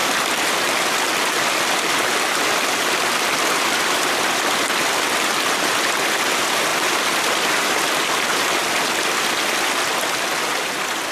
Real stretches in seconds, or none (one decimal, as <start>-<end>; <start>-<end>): 0.0-11.1